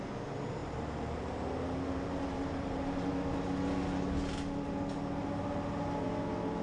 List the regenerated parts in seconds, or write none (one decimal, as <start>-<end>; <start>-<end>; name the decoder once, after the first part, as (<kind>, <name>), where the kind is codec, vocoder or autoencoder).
0.6-3.1 (vocoder, BigVGAN v2)